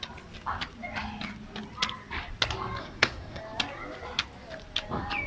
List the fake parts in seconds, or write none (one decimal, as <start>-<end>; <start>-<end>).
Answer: 2.8-3.4